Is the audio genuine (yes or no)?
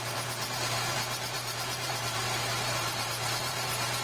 no